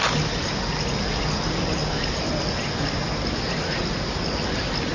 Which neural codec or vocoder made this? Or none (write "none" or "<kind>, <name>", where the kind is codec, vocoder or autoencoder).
none